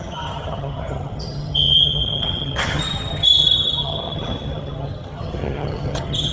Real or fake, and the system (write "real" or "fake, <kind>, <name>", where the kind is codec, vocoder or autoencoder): fake, vocoder, HiFi-GAN